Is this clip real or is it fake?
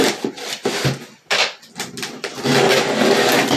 real